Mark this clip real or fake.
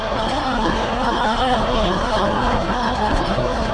fake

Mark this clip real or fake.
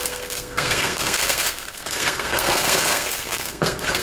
fake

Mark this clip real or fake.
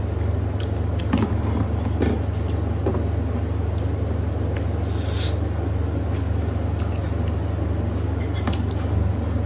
real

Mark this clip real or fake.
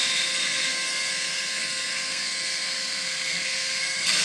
fake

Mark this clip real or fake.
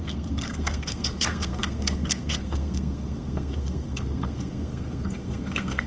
fake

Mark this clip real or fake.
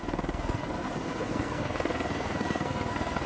fake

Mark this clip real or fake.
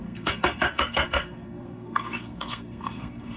fake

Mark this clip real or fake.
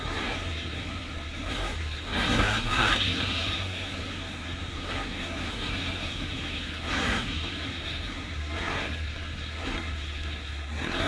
fake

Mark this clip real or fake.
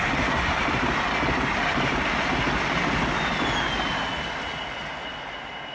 real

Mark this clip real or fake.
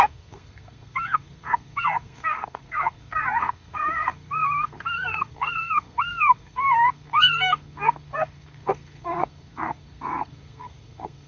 fake